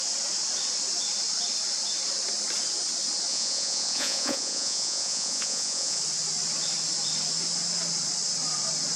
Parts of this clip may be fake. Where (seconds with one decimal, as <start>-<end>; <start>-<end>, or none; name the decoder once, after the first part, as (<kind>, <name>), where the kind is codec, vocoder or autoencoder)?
3.3-6.0 (vocoder, Vocos)